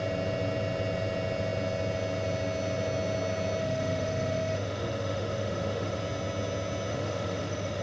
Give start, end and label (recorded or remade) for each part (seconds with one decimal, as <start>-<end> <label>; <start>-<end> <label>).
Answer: 0.0-3.6 recorded; 3.6-6.0 remade; 6.0-6.9 recorded; 6.9-7.8 remade